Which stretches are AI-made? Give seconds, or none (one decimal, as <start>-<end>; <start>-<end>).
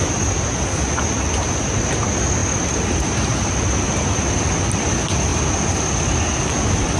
none